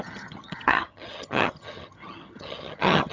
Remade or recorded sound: remade